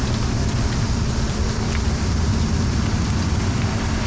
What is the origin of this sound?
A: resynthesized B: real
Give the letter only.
A